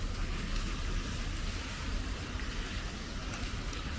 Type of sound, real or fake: real